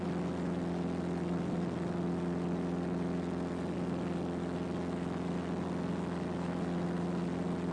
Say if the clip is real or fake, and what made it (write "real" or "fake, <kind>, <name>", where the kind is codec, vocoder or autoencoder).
real